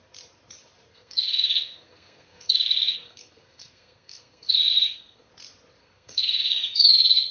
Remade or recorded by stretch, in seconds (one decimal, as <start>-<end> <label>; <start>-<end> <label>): 0.0-0.9 recorded; 0.9-5.3 remade; 5.3-5.8 recorded; 5.8-7.3 remade